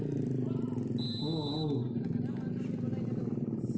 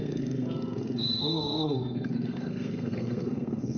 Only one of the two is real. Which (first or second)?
first